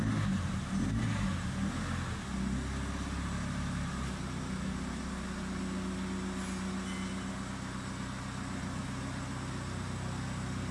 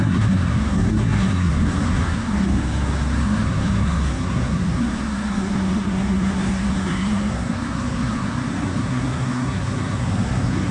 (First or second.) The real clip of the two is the first